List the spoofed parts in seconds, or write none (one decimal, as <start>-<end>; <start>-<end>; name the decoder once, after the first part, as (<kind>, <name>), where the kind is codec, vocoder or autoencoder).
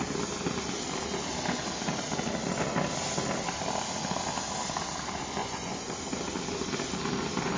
5.4-6.0 (vocoder, Vocos)